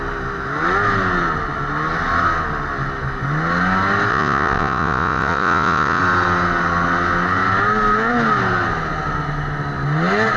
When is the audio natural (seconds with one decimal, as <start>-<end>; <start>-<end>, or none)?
0.0-4.1; 6.0-10.4